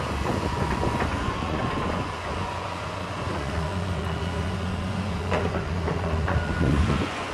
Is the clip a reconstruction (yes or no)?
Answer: yes